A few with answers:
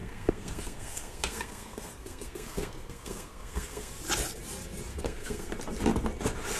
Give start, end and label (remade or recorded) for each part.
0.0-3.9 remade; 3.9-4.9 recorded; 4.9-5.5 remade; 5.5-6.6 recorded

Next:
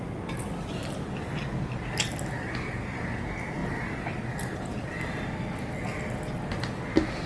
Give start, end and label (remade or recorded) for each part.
0.0-7.3 recorded